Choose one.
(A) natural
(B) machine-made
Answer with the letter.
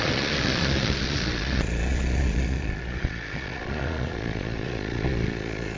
B